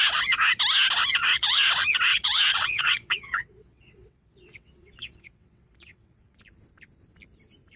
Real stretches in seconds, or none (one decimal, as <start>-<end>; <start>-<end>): 0.0-1.2; 1.7-2.1; 6.4-7.8